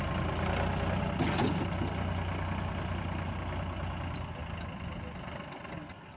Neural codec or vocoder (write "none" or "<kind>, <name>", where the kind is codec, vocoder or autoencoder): none